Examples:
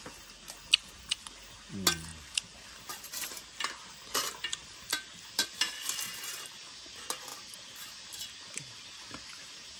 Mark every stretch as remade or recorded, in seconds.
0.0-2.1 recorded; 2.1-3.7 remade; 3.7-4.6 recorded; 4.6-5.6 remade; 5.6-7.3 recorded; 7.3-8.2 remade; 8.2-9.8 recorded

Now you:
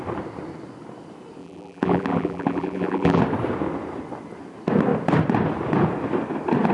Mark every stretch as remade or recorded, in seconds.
0.0-1.4 recorded; 1.4-3.2 remade; 3.2-6.7 recorded

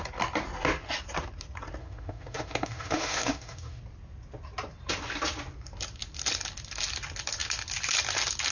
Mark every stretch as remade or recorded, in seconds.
0.0-1.8 recorded; 1.8-3.8 remade; 3.8-8.5 recorded

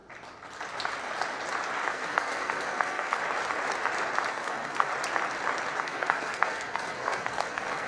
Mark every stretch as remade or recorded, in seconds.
0.0-1.9 recorded; 1.9-3.2 remade; 3.2-4.3 recorded; 4.3-4.9 remade; 4.9-5.8 recorded; 5.8-7.9 remade

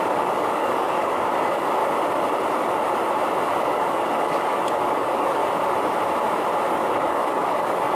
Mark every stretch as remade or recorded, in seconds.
0.0-1.8 remade; 1.8-3.6 recorded; 3.6-5.4 remade; 5.4-6.7 recorded; 6.7-7.9 remade

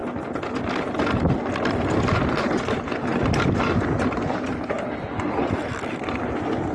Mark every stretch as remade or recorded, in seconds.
0.0-6.7 recorded